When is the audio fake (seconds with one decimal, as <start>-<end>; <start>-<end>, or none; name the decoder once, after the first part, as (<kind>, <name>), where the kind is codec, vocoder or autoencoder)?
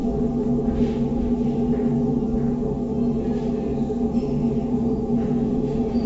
4.4-6.1 (vocoder, Vocos)